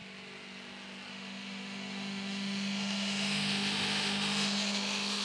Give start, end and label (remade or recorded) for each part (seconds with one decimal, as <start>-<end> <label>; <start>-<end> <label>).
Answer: 0.0-1.1 recorded; 1.1-5.2 remade